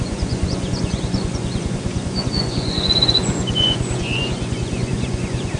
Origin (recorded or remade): remade